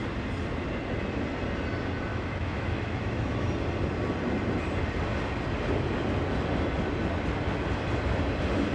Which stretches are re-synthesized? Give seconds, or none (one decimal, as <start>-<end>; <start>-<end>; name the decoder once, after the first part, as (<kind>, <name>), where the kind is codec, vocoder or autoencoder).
2.1-3.5 (autoencoder, DAC-VAE)